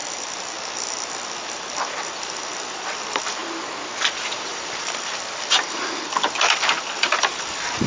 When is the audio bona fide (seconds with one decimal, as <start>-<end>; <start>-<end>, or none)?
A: 3.4-4.1